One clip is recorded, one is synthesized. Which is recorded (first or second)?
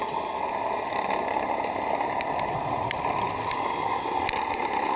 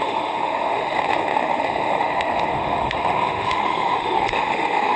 first